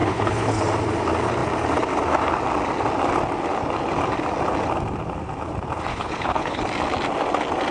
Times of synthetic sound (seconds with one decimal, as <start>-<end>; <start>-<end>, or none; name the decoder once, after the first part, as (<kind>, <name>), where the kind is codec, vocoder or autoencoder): 0.0-0.6 (codec, HILCodec); 5.9-6.6